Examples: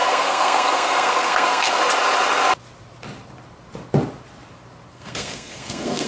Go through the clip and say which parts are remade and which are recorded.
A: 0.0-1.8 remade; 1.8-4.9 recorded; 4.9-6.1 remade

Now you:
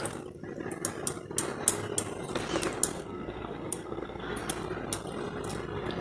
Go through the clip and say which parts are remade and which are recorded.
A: 0.0-2.9 recorded; 2.9-4.4 remade; 4.4-6.0 recorded